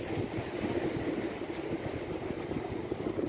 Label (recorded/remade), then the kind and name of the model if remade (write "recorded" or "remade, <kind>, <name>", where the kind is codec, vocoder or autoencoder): recorded